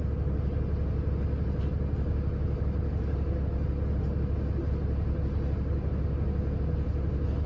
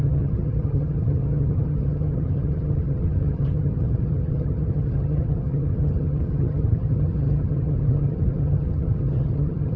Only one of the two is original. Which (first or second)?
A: first